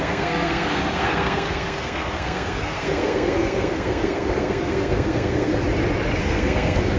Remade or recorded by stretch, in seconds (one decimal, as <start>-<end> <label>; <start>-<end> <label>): 0.0-5.5 remade; 5.5-6.2 recorded; 6.2-7.0 remade